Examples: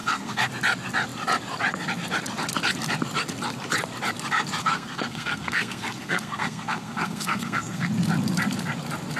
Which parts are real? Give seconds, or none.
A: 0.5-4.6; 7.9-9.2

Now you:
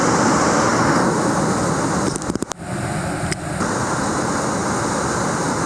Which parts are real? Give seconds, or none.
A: 0.0-5.7

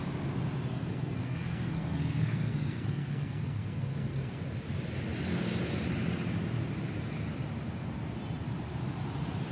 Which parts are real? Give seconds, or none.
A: 0.0-0.7; 4.4-9.5

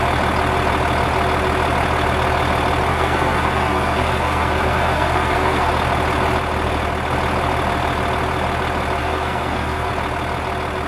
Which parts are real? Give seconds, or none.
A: 0.0-2.9; 5.7-9.0; 9.9-10.9

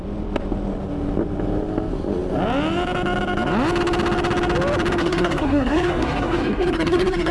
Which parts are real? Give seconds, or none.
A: 0.0-5.0

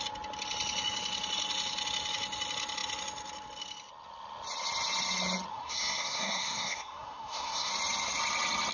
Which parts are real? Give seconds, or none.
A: 0.0-5.5; 7.7-8.7

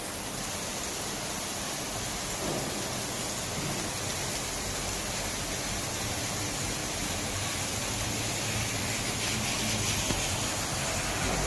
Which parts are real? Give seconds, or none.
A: 0.0-11.5

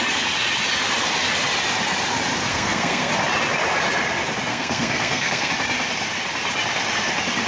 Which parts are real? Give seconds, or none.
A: 0.0-2.5; 3.1-4.5; 5.5-7.5